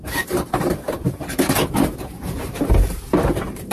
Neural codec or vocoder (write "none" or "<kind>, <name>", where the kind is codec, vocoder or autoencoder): vocoder, BigVGAN v2